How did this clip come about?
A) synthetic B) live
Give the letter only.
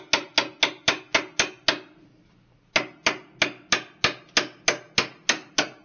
B